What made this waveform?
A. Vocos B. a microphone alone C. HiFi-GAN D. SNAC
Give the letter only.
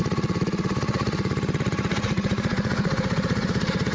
A